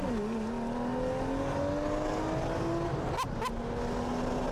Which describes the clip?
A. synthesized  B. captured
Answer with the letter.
B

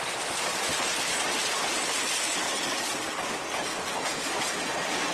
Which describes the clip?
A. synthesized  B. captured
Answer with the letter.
B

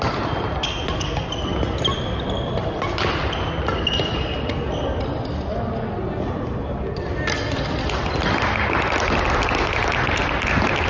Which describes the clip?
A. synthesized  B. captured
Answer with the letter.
B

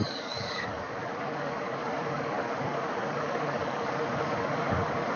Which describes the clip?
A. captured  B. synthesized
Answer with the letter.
B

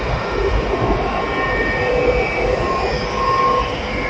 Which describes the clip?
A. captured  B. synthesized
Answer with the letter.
A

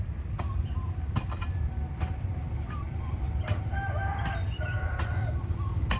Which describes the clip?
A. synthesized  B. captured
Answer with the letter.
A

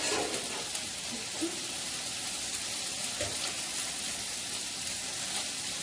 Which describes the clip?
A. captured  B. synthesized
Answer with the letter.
A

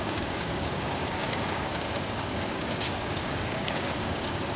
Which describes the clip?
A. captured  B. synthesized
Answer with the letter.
B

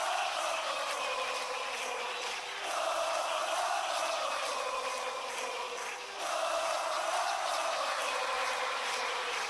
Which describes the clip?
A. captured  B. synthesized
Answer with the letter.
A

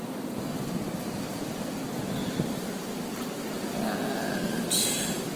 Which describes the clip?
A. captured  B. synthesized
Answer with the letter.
A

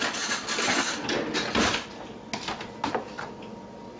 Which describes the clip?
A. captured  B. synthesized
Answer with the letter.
A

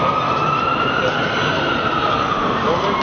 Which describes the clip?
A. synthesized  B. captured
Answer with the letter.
B